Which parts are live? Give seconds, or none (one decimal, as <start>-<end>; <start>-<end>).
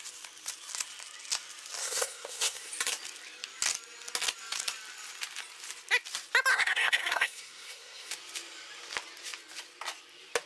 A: 0.0-1.8; 2.7-6.5; 8.1-10.5